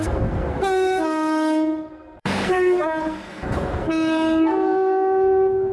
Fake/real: fake